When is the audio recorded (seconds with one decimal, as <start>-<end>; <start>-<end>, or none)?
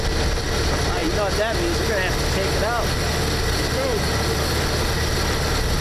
0.0-5.8